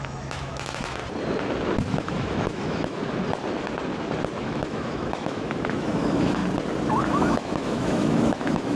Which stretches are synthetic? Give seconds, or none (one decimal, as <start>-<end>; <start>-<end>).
0.0-1.0; 1.9-3.0; 4.4-6.4; 7.0-8.8